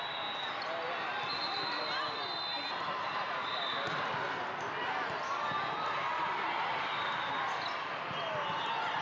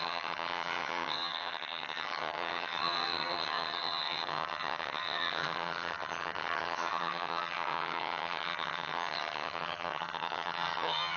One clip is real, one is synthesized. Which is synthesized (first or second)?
second